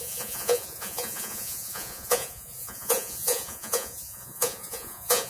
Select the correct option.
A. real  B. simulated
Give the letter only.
B